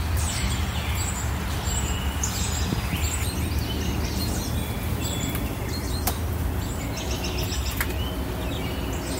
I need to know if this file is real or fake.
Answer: real